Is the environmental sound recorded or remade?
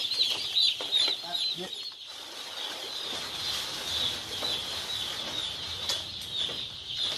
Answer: recorded